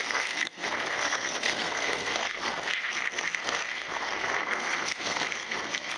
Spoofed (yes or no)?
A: yes